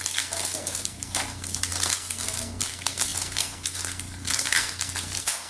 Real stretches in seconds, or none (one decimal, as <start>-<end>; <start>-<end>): none